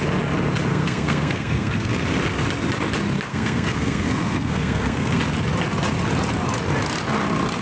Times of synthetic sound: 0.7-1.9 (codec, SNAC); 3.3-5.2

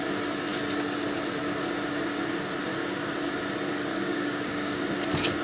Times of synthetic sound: 2.7-3.3 (codec, DAC); 3.9-4.8

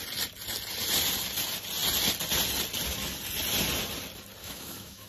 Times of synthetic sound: 4.4-5.1 (autoencoder, DAC-VAE)

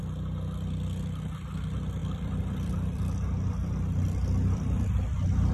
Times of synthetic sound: 2.0-4.9 (vocoder, BigVGAN v2)

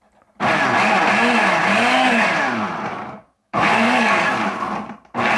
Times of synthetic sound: 1.7-2.3 (codec, DAC); 2.9-4.3